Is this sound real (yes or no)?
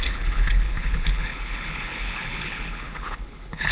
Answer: no